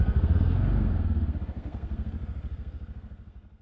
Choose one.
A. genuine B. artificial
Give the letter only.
B